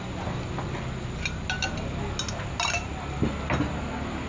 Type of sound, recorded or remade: recorded